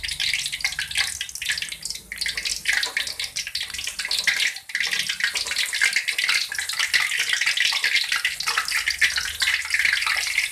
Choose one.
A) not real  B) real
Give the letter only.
B